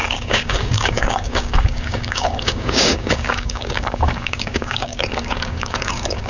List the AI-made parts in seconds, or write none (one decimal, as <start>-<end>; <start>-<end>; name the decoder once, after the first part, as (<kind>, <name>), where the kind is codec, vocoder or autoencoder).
0.0-6.3 (codec, DAC)